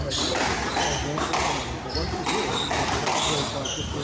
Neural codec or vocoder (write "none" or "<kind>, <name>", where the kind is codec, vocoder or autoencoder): none